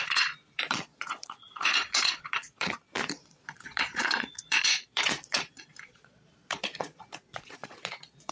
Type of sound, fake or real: fake